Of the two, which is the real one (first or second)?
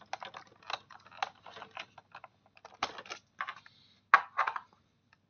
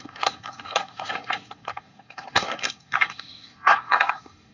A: first